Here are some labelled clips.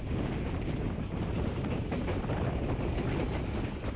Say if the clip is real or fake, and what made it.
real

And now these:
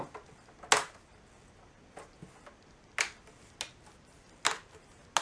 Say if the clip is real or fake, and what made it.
real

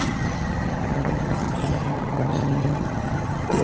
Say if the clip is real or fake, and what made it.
fake, vocoder, HiFi-GAN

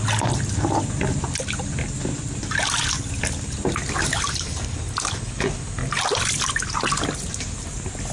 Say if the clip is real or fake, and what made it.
real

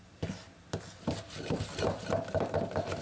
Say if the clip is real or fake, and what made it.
real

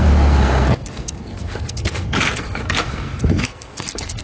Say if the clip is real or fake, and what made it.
fake, codec, SNAC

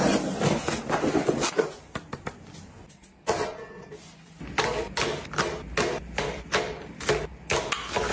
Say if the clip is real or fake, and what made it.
real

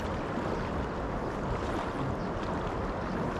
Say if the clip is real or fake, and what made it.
real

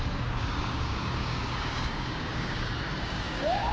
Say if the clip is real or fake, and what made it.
fake, codec, DAC